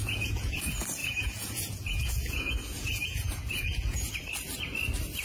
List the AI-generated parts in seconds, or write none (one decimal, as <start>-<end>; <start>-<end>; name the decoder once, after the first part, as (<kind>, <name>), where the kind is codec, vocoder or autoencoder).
0.0-0.6 (vocoder, Vocos); 1.0-4.1